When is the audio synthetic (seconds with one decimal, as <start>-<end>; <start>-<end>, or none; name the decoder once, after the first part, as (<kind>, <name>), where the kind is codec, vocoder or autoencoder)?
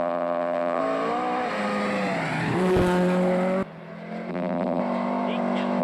0.0-0.8 (vocoder, BigVGAN v2); 4.3-4.8